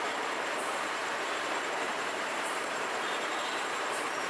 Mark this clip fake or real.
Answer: fake